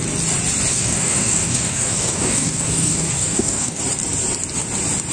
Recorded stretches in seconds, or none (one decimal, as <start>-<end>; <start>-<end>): 0.0-0.7; 3.8-5.1